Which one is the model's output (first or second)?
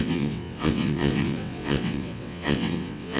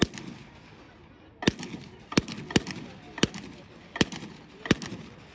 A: first